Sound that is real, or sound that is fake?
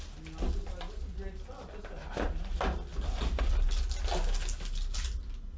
real